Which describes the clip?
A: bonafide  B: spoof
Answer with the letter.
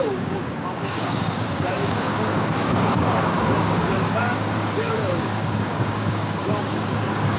B